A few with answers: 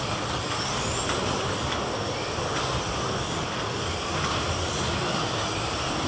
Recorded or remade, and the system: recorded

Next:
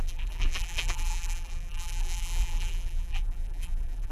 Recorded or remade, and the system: remade, vocoder, BigVGAN v2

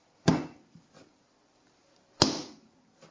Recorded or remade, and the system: recorded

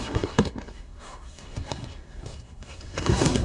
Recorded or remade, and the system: remade, codec, SNAC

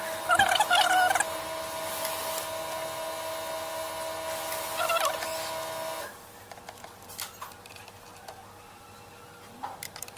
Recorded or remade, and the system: recorded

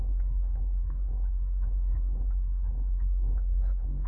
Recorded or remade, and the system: remade, codec, SNAC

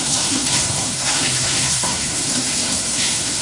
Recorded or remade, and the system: remade, codec, SNAC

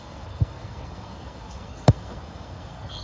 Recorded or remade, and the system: remade, codec, SNAC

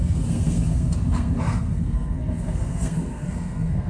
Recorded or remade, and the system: remade, codec, SNAC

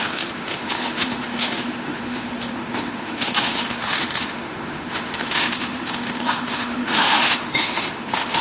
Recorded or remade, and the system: remade, autoencoder, DAC-VAE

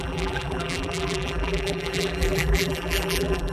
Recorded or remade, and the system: remade, vocoder, BigVGAN v2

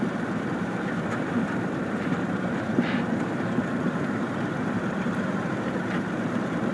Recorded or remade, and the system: remade, vocoder, BigVGAN v2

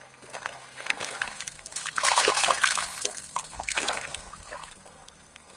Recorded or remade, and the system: remade, codec, SNAC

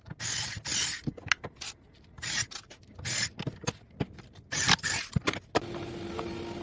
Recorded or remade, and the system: recorded